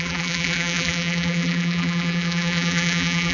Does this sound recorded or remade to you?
remade